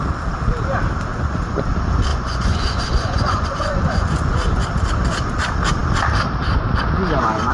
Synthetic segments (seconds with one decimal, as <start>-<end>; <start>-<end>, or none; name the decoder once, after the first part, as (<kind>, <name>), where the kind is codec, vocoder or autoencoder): 1.1-1.7 (vocoder, Vocos); 2.1-4.6